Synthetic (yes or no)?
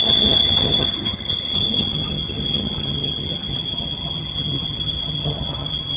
yes